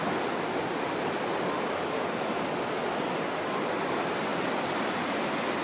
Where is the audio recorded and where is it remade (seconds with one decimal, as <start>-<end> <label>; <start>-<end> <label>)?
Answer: 0.0-5.6 recorded